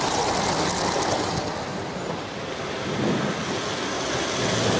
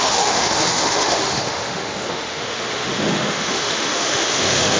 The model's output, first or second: second